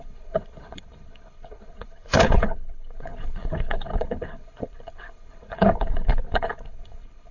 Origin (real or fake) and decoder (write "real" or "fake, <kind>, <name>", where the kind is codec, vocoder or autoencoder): fake, codec, HILCodec